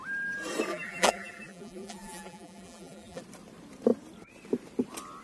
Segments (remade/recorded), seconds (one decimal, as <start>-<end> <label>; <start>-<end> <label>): 0.0-0.7 recorded; 0.7-3.2 remade; 3.2-5.2 recorded